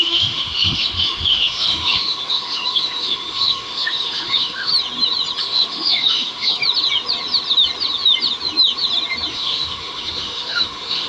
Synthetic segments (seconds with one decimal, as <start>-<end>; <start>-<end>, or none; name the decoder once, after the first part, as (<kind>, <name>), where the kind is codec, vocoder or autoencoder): 0.0-4.7 (autoencoder, DAC-VAE); 5.4-6.6; 9.3-11.1